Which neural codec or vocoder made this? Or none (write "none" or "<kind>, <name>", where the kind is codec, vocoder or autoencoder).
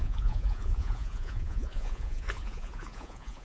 vocoder, Vocos